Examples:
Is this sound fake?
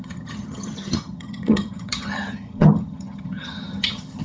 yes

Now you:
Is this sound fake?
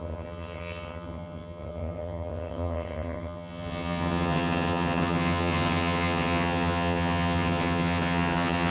yes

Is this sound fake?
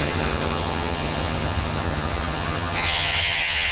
yes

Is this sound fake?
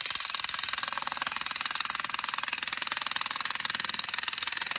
no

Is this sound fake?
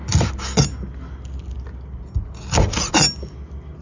no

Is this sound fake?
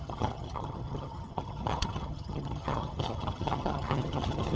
yes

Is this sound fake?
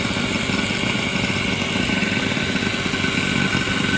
no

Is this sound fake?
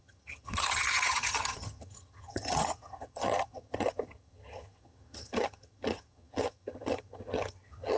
yes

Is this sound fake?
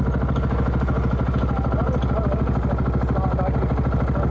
no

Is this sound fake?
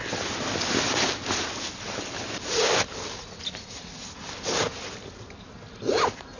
no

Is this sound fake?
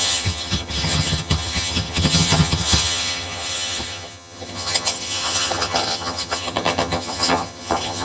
yes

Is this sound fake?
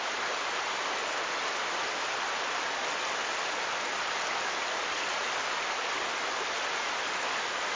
no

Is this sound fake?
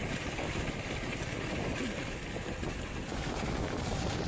no